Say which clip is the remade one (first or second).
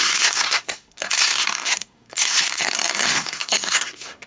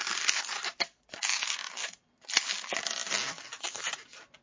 first